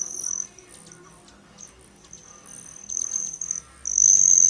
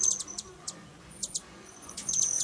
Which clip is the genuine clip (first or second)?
first